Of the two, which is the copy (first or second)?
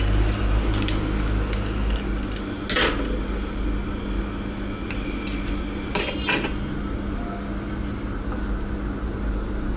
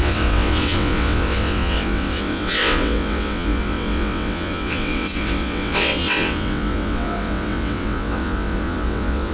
second